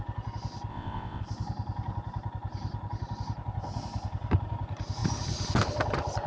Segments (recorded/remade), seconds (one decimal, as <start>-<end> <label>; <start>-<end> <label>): 0.0-0.7 recorded; 0.7-1.2 remade; 1.2-6.3 recorded